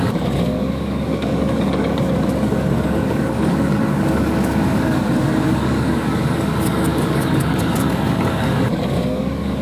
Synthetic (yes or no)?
yes